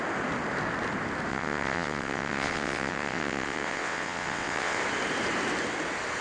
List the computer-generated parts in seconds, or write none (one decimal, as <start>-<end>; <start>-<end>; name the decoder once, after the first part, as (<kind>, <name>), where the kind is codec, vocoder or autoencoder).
1.3-4.8 (vocoder, WaveNeXt)